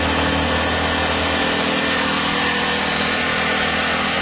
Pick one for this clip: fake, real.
real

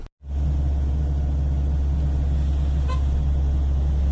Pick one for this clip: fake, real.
real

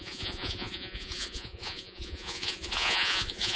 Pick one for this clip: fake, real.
fake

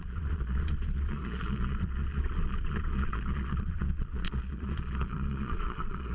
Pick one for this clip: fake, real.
fake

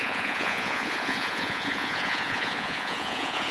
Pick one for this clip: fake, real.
fake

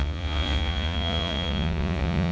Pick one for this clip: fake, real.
fake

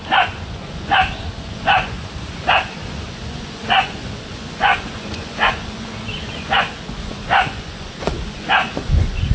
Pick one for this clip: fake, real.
fake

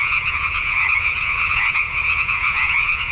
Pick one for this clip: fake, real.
fake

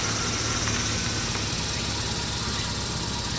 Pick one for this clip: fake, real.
real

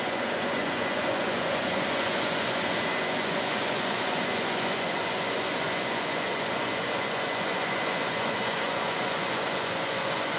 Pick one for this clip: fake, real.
fake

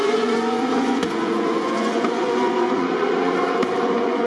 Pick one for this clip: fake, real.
fake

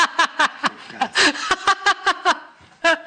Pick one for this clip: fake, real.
real